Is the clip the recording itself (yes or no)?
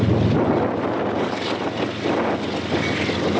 yes